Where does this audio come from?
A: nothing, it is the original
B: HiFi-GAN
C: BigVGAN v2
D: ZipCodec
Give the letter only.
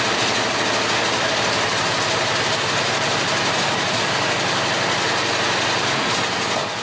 A